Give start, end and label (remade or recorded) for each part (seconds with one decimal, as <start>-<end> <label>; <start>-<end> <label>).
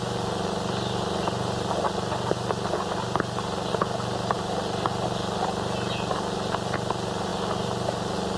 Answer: 0.0-8.4 recorded